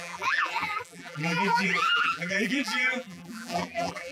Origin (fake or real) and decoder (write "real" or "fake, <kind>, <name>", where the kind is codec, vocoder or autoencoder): fake, vocoder, BigVGAN v2